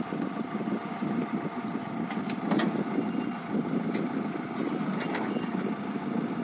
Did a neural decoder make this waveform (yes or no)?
yes